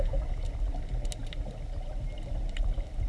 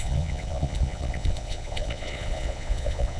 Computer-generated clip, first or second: second